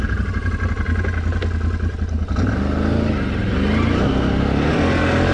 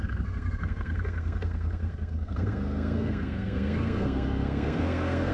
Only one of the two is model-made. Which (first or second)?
second